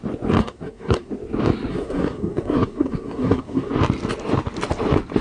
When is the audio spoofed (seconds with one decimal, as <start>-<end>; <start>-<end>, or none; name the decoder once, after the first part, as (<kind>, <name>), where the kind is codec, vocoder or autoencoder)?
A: 0.4-1.1 (codec, SNAC); 1.7-3.7